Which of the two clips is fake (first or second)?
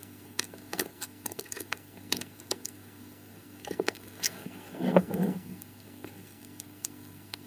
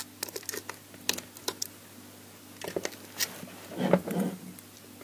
first